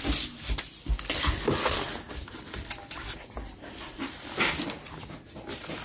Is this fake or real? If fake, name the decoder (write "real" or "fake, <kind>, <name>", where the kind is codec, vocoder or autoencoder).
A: real